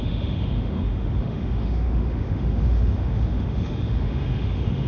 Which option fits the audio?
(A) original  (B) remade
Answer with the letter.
B